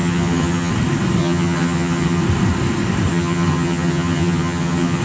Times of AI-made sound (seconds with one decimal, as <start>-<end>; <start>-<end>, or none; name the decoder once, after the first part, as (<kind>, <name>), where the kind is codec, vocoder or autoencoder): 0.0-0.7 (vocoder, HiFi-GAN); 1.2-2.2; 3.1-5.0